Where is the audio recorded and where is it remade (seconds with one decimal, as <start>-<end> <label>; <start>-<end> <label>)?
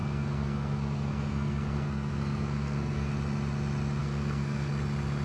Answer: 0.0-3.1 remade; 3.1-4.0 recorded; 4.0-4.7 remade; 4.7-5.2 recorded